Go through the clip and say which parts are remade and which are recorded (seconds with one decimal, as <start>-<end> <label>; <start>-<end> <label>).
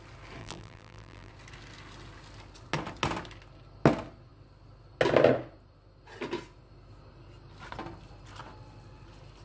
0.0-0.4 recorded; 0.4-1.3 remade; 1.3-9.4 recorded